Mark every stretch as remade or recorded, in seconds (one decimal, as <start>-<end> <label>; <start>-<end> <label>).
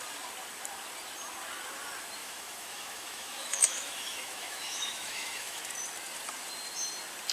0.0-2.2 recorded; 2.2-5.6 remade; 5.6-7.3 recorded